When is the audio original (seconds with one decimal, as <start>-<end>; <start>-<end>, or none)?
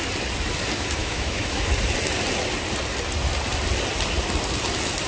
0.0-1.0; 1.6-5.1